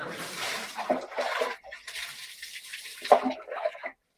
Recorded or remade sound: remade